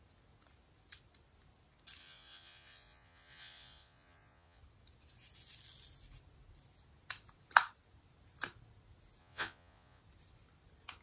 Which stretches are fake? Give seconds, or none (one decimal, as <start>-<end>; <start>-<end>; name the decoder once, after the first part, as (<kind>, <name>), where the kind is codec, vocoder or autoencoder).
2.0-4.6 (vocoder, Vocos); 9.2-10.0